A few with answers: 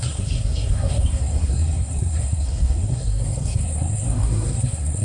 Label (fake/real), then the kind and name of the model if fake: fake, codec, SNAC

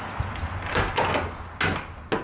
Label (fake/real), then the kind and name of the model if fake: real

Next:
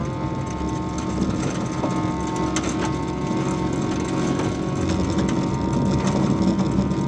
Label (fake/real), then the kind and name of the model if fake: real